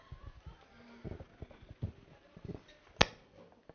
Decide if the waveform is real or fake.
real